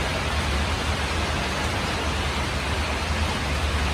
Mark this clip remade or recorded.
recorded